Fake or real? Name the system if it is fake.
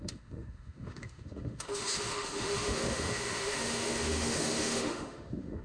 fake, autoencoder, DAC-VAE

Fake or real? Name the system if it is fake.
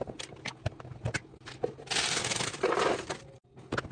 real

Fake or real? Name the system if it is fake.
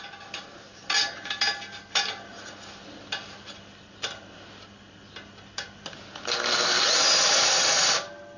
real